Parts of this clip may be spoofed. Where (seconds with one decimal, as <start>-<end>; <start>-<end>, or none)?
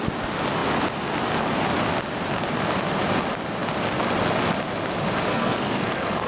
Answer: 5.3-6.3